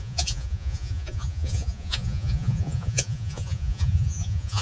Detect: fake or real fake